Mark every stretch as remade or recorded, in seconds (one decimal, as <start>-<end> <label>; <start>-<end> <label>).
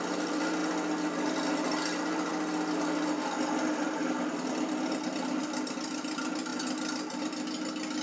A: 0.0-8.0 recorded